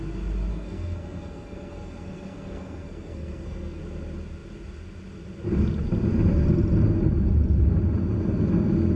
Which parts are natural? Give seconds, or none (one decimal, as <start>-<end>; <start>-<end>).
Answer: 0.0-0.5; 3.8-9.0